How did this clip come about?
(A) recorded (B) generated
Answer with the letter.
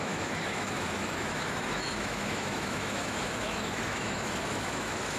B